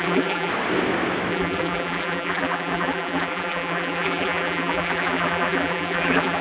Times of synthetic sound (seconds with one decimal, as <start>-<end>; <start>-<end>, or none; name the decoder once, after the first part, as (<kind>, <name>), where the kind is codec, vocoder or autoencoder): 0.0-0.5 (vocoder, BigVGAN v2); 1.3-6.4